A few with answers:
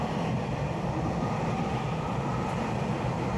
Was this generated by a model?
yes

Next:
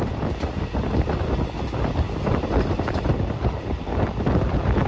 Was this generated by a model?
no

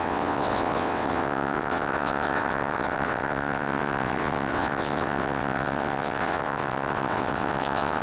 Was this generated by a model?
yes